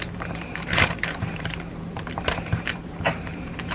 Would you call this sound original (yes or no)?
no